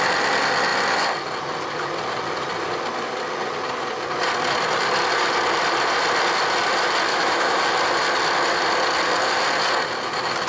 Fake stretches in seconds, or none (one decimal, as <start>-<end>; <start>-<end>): 7.1-7.6